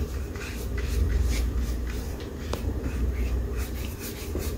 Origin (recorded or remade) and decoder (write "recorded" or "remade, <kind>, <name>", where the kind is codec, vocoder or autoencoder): remade, vocoder, BigVGAN v2